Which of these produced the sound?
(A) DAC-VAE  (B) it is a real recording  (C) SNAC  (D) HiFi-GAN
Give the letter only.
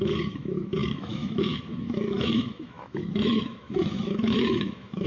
A